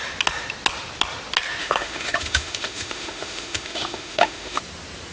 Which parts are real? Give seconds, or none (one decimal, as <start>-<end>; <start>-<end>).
0.0-1.6; 4.6-5.1

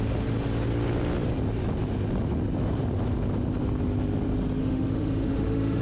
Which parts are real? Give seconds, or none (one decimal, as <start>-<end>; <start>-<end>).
0.0-4.6